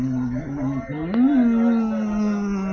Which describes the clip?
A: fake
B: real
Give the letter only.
B